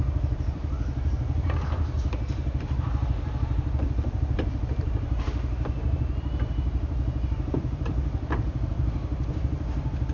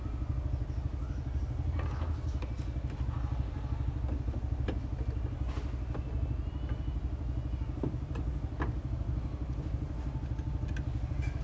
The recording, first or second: second